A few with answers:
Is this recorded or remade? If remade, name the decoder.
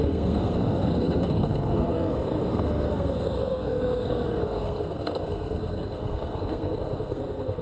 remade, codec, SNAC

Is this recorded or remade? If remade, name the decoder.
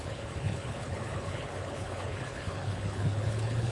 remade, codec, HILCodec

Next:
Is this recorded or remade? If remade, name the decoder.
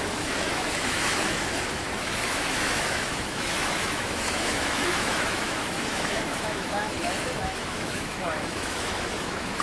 remade, autoencoder, DAC-VAE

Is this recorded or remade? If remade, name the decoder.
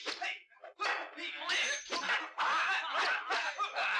recorded